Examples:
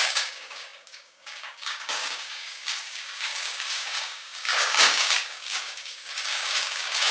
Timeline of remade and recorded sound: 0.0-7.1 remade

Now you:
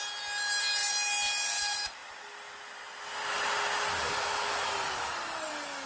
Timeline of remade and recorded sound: 0.0-5.9 recorded